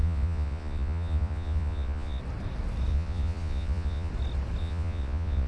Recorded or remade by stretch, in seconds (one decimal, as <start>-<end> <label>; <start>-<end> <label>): 0.0-2.2 remade; 2.2-2.9 recorded; 2.9-4.1 remade; 4.1-4.6 recorded; 4.6-5.5 remade